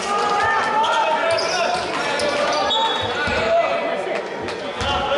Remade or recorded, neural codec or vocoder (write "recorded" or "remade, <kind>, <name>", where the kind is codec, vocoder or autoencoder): recorded